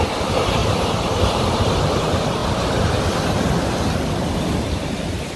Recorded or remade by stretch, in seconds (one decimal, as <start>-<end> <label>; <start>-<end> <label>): 0.0-0.6 recorded; 0.6-1.6 remade; 1.6-5.4 recorded